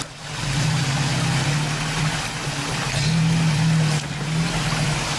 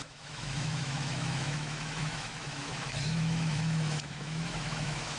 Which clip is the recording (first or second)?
first